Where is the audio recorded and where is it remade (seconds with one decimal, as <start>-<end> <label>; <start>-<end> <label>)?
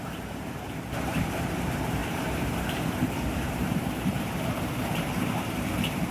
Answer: 0.0-6.1 remade